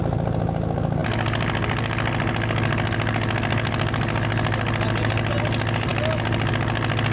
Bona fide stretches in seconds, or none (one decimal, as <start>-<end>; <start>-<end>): 0.0-7.1